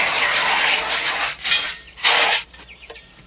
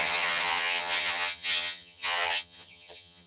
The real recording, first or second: first